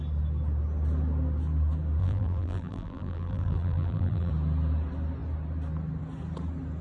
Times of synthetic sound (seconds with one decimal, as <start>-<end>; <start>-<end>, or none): 2.0-4.3